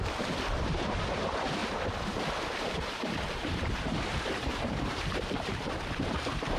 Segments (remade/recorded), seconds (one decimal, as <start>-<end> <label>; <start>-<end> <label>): 0.0-6.6 remade